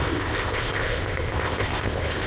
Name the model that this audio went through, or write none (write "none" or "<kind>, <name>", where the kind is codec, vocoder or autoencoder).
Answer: codec, ZipCodec